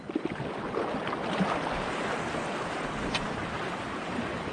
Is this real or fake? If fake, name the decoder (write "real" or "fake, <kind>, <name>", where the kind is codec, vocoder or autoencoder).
real